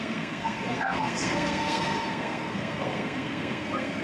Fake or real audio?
fake